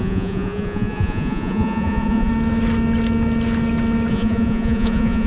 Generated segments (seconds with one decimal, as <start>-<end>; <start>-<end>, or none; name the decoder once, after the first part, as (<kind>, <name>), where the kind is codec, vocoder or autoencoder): 0.0-2.3 (vocoder, Vocos); 4.1-5.3